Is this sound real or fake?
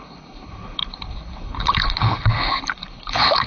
fake